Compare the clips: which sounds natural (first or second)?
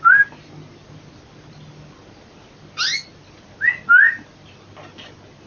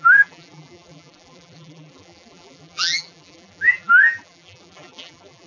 first